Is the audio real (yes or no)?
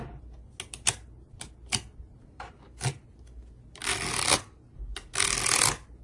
yes